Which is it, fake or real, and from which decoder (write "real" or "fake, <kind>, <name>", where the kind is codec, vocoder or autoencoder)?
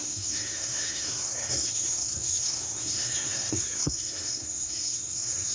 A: fake, codec, SNAC